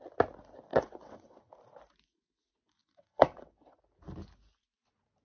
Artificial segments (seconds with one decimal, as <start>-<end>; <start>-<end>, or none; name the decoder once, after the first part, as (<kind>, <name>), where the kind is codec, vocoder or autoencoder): 0.7-1.5 (vocoder, WaveNeXt); 2.8-3.8